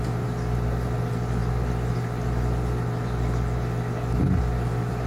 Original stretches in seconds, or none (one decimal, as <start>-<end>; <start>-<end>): 0.0-5.1